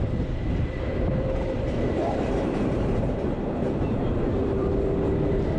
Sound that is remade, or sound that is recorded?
remade